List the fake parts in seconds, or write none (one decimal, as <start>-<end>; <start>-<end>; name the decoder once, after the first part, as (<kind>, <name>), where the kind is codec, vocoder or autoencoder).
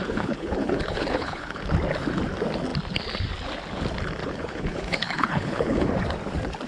0.0-1.6 (codec, HILCodec); 4.2-5.9